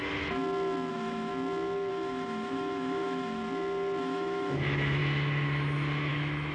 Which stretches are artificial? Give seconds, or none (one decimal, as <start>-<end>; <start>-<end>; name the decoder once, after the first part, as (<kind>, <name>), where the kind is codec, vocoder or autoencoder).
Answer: 0.9-1.3 (autoencoder, DAC-VAE); 1.9-3.4; 4.0-5.0; 6.1-6.5